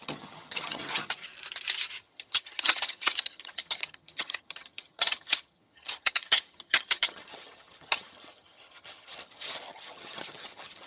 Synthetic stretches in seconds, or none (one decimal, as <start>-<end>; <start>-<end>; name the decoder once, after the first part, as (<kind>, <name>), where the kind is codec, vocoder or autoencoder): 0.0-1.3 (vocoder, HiFi-GAN); 2.0-10.9